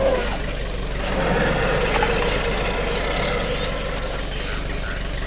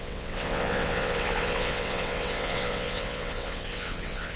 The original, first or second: first